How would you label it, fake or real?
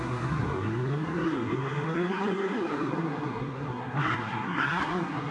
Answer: fake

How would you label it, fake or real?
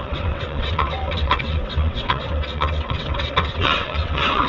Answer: fake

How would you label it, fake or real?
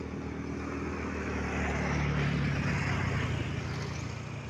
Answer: real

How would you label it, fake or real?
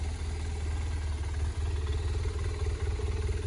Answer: real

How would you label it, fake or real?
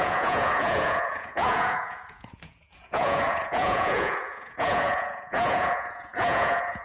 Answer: fake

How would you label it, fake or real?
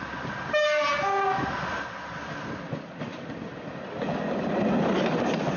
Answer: real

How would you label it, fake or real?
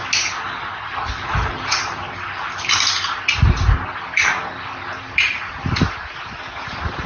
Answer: real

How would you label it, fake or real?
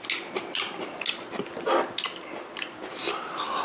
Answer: real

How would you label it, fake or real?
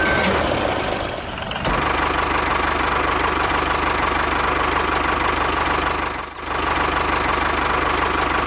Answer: real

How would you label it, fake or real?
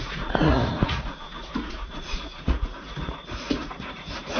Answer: fake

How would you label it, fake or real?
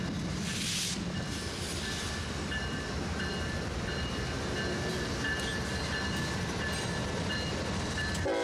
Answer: real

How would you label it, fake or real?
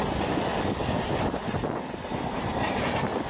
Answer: real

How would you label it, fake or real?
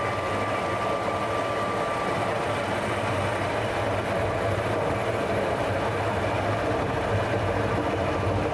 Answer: real